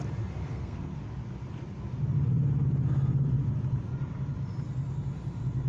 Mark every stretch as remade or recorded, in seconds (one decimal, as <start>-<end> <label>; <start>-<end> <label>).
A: 0.0-0.4 recorded; 0.4-1.0 remade; 1.0-5.7 recorded